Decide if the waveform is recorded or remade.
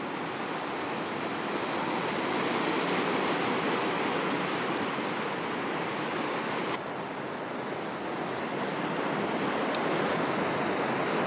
recorded